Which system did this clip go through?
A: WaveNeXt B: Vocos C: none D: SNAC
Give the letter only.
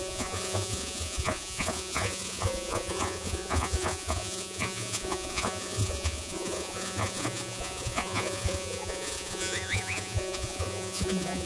B